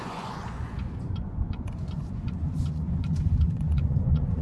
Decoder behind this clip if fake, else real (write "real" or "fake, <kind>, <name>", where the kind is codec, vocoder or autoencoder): fake, vocoder, Vocos